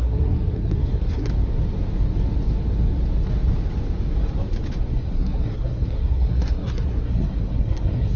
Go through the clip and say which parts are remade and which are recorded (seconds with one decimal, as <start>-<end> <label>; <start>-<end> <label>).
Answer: 0.0-1.3 remade; 1.3-4.8 recorded; 4.8-8.2 remade